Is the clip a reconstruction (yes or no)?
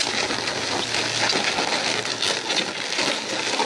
no